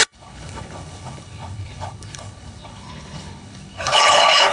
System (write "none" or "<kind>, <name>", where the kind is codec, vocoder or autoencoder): codec, HILCodec